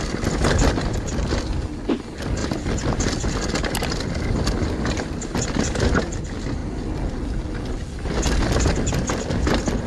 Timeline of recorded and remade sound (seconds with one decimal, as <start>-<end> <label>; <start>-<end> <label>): 0.0-9.9 recorded